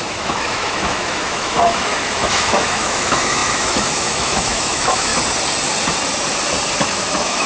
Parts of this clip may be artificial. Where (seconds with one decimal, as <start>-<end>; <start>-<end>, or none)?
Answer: 0.0-5.1; 6.8-7.5